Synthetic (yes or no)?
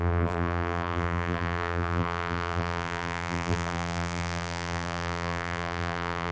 yes